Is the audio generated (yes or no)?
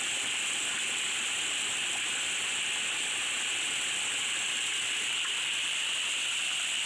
no